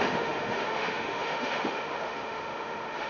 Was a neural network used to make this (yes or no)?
yes